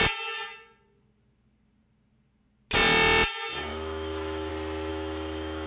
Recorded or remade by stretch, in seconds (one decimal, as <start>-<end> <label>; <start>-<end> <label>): 0.0-3.7 recorded; 3.7-4.5 remade; 4.5-4.9 recorded; 4.9-5.7 remade